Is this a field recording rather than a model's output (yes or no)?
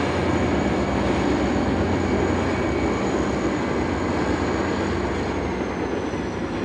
yes